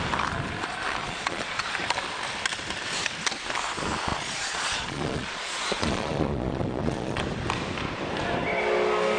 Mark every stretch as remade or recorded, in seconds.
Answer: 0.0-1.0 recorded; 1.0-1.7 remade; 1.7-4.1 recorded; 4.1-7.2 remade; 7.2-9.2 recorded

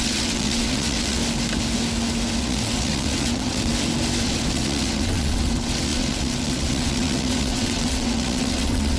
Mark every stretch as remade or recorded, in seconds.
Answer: 0.0-1.2 remade; 1.2-2.4 recorded; 2.4-3.7 remade; 3.7-4.2 recorded; 4.2-9.0 remade

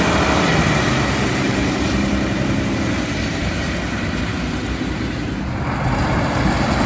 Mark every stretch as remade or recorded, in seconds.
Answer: 0.0-4.3 remade; 4.3-6.9 recorded